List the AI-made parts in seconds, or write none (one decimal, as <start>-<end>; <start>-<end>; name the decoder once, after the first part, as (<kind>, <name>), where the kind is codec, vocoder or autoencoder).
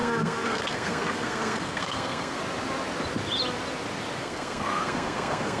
0.0-2.4 (codec, SNAC); 4.2-5.6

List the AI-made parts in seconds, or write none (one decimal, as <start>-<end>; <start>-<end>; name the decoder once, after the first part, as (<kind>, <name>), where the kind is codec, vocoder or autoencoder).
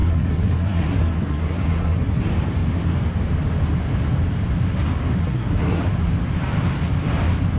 0.0-2.2 (codec, SNAC); 5.2-5.8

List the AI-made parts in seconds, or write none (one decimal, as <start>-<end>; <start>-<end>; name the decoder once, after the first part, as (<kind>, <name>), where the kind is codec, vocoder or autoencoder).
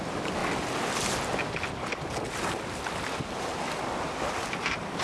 none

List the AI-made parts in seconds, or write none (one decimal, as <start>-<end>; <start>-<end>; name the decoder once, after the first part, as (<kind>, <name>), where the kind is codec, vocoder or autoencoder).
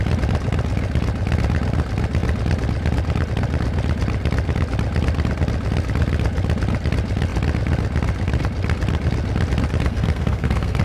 9.9-10.8 (codec, SNAC)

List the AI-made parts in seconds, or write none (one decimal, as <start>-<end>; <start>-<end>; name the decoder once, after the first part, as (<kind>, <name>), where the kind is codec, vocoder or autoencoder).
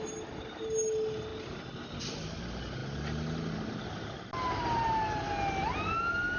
none